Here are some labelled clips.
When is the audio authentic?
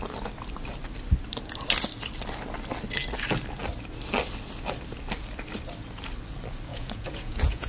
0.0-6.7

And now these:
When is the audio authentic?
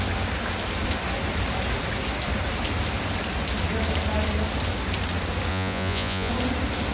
0.0-5.5; 6.3-6.9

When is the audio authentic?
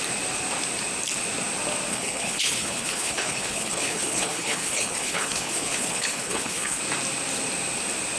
0.0-1.9; 6.8-8.2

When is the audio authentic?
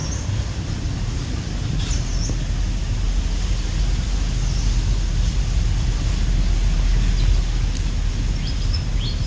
0.0-9.3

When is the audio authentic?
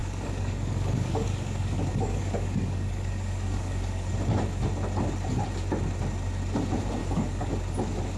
4.1-7.0; 7.5-8.2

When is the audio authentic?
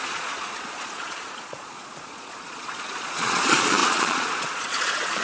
none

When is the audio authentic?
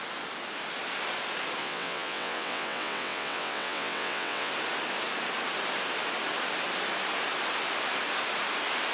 0.0-1.6; 4.5-8.9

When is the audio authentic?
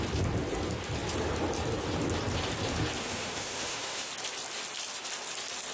0.0-3.0; 4.1-5.7